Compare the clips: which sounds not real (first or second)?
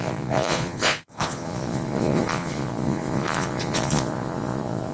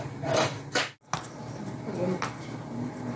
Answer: first